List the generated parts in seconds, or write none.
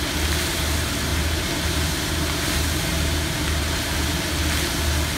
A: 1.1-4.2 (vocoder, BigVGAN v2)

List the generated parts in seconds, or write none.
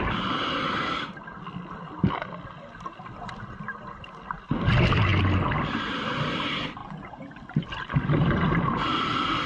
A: none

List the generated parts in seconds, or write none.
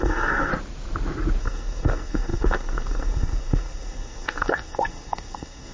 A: 0.0-0.5 (codec, SNAC); 1.4-5.7